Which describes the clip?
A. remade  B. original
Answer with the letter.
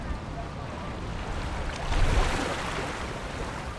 B